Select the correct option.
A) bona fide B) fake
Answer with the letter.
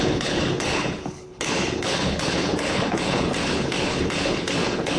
B